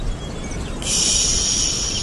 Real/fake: real